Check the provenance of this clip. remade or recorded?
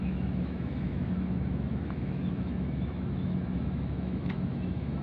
remade